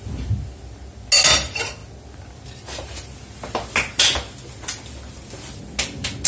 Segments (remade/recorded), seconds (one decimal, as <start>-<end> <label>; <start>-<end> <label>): 0.0-6.3 recorded